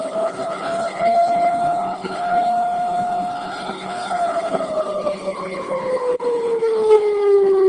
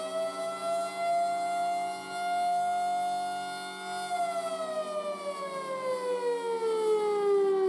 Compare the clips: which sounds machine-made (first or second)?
first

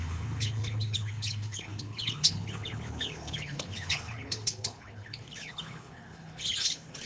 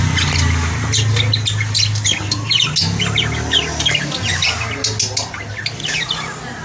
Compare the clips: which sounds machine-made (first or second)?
first